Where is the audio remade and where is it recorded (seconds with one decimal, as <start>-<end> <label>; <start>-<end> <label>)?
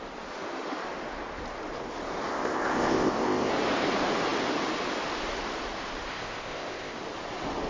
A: 0.0-2.3 recorded; 2.3-3.5 remade; 3.5-6.1 recorded; 6.1-7.0 remade; 7.0-7.7 recorded